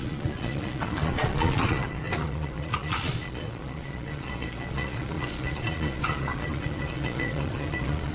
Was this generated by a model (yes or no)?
yes